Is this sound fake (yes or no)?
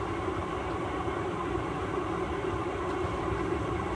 yes